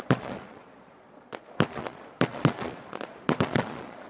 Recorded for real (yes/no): no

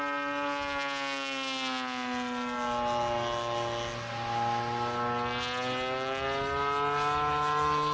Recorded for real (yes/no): yes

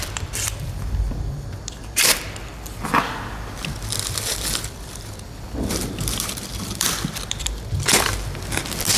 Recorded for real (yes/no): no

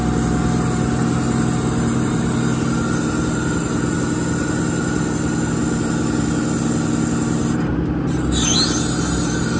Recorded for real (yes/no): yes